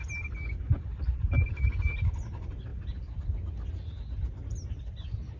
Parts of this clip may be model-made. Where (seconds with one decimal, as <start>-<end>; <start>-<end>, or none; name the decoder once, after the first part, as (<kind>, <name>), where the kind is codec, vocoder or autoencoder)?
0.9-1.6 (vocoder, BigVGAN v2)